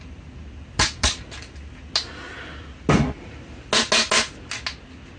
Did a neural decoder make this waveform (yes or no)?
no